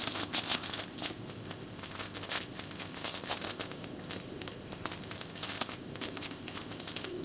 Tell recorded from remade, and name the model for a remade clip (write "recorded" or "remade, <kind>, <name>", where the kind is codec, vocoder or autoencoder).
remade, codec, ZipCodec